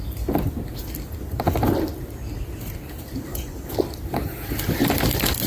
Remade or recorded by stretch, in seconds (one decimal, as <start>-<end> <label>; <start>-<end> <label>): 0.0-5.5 recorded